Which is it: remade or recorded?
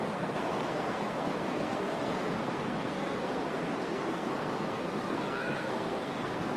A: remade